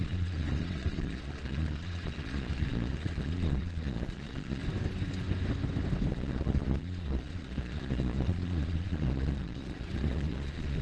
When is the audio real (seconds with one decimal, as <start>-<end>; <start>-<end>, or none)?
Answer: 4.6-6.1